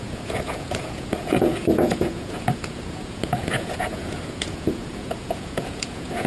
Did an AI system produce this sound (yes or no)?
yes